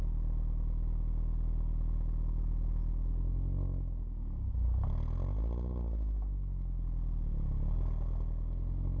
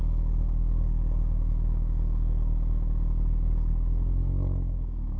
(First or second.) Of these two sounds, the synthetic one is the second